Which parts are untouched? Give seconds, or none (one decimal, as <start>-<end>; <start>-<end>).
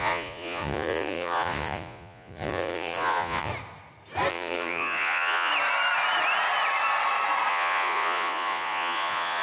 3.5-4.3; 5.5-7.5